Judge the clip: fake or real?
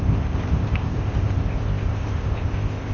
fake